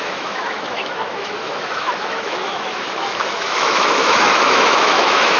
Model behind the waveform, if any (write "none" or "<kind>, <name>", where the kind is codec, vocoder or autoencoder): autoencoder, DAC-VAE